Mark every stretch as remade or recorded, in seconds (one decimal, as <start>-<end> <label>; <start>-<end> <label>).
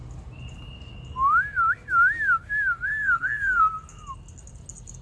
0.0-2.9 recorded; 2.9-3.6 remade; 3.6-5.0 recorded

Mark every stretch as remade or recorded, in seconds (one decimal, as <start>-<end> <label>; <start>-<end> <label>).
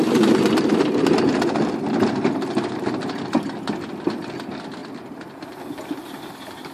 0.0-6.7 recorded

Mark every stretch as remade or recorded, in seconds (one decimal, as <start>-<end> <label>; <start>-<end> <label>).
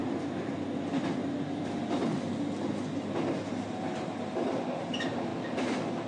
0.0-3.5 recorded; 3.5-5.3 remade; 5.3-6.1 recorded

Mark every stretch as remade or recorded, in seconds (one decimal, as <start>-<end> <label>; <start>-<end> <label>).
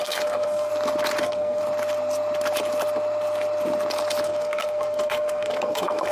0.0-0.7 remade; 0.7-1.2 recorded; 1.2-1.6 remade; 1.6-4.2 recorded; 4.2-6.1 remade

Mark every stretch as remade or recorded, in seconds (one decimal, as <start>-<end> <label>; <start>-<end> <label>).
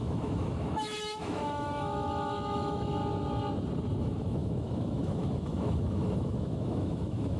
0.0-3.0 remade; 3.0-4.0 recorded; 4.0-7.4 remade